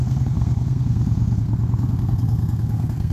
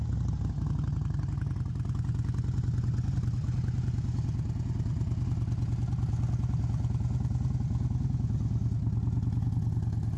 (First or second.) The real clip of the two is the second